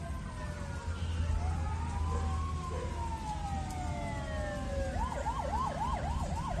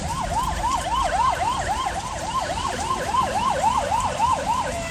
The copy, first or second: second